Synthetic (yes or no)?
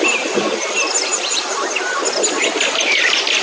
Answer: yes